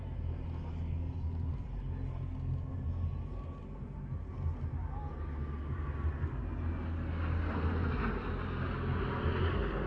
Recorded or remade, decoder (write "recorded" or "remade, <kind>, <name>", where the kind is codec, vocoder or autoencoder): recorded